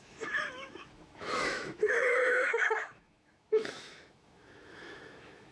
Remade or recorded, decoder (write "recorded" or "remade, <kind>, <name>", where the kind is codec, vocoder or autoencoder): remade, autoencoder, DAC-VAE